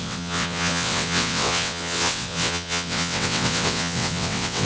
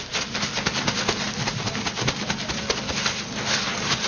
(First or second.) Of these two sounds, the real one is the second